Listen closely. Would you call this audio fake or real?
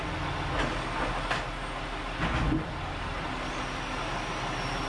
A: real